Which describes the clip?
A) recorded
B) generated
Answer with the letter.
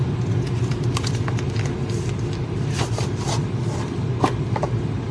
A